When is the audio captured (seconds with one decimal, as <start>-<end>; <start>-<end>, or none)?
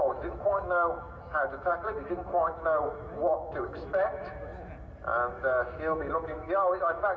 4.5-5.3